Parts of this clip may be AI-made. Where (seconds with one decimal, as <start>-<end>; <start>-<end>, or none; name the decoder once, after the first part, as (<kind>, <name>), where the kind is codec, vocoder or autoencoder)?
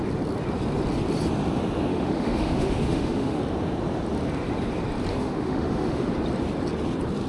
1.9-3.4 (autoencoder, DAC-VAE); 5.1-6.1